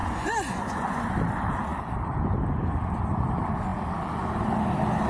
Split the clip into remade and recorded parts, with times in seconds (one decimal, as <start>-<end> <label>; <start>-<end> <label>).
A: 0.0-1.0 remade; 1.0-5.1 recorded